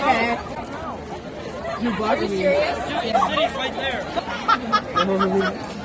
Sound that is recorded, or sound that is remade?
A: recorded